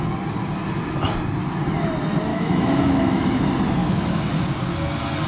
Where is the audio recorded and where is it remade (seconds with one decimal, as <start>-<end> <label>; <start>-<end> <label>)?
0.0-2.3 recorded; 2.3-3.4 remade; 3.4-3.8 recorded; 3.8-4.3 remade; 4.3-5.3 recorded